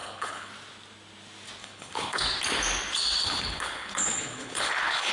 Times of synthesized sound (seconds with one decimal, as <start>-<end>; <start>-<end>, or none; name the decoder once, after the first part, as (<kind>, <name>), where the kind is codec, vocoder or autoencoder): 0.0-0.5 (codec, HILCodec); 1.6-2.2; 3.2-5.1